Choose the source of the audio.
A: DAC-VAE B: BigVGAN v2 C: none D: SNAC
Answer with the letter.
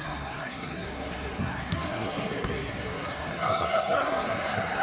D